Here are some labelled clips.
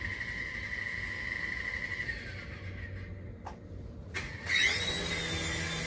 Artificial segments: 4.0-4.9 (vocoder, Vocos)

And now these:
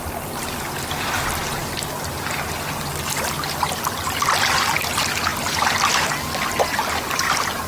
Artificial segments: none

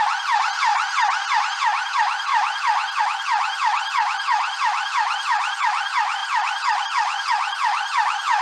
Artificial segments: none

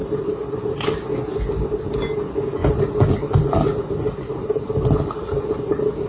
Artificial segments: none

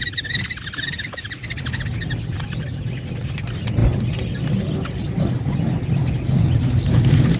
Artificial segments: none

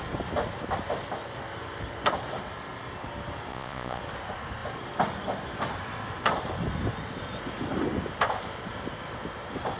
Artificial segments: 3.5-4.0 (vocoder, Vocos)